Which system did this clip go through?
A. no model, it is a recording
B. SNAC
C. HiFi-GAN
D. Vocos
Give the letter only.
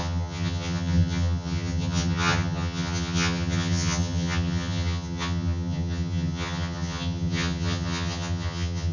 C